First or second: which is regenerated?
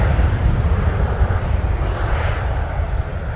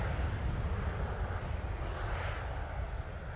first